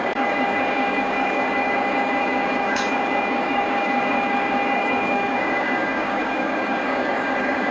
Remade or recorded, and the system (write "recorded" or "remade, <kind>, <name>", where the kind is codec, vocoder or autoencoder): remade, codec, DAC